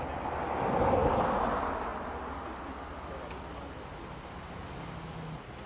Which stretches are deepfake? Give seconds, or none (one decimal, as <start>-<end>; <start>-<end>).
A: none